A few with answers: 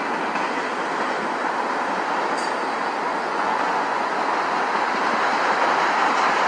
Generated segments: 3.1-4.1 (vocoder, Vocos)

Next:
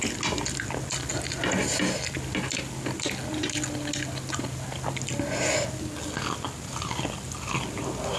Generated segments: none

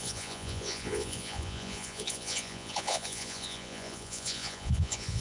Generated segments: 0.0-5.2 (vocoder, Vocos)

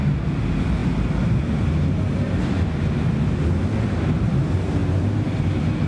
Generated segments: none

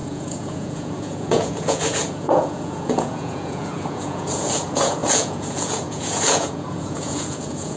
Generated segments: 0.0-7.8 (vocoder, Vocos)

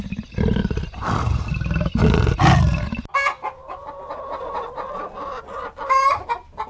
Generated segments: none